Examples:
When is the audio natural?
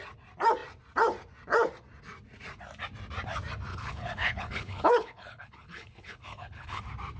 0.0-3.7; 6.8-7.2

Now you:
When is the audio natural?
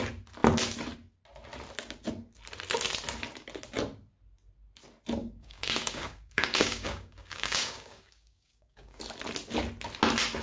0.0-5.2; 9.0-10.4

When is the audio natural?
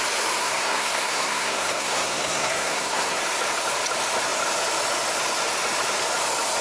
0.0-0.4; 3.2-6.6